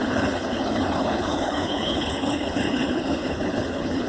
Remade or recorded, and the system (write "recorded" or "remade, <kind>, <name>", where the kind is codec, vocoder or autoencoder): remade, codec, HILCodec